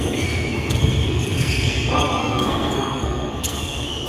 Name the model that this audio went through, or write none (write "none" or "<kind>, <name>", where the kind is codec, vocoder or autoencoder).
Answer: codec, SNAC